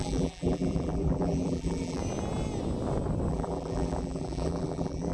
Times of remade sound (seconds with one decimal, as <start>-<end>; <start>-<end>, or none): 0.0-2.0; 3.3-5.1